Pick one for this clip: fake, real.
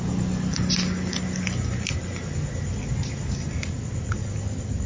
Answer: real